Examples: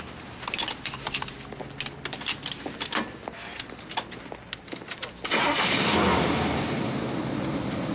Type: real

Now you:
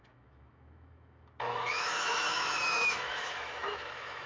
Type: fake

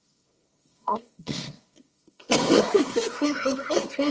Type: fake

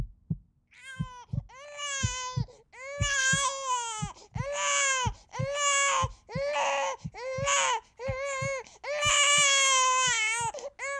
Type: real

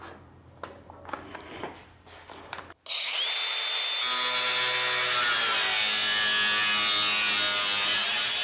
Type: real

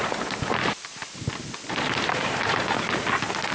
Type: real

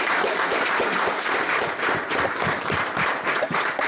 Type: fake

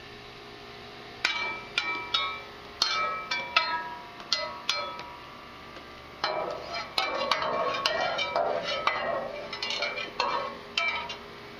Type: real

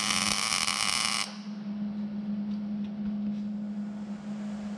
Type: real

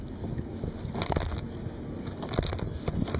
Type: real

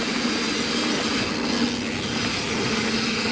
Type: real